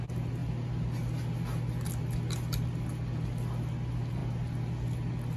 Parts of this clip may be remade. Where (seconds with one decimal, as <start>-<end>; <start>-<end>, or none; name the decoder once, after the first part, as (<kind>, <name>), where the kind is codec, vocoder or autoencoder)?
none